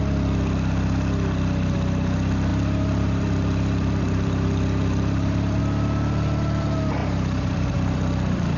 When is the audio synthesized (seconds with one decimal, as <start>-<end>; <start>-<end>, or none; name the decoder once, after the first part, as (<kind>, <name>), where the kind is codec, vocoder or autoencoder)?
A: 2.5-5.6 (vocoder, BigVGAN v2); 7.0-8.6